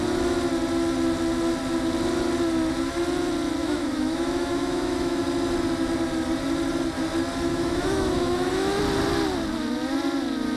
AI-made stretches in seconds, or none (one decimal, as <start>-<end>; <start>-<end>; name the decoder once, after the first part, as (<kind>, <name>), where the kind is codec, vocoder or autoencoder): 3.6-5.2 (autoencoder, DAC-VAE); 7.5-8.8